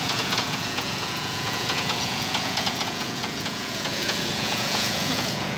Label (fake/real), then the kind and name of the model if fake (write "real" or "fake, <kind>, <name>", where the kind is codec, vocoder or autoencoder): fake, vocoder, Vocos